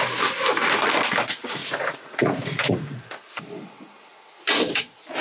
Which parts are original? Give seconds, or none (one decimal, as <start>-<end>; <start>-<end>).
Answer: 0.0-1.6; 3.2-5.2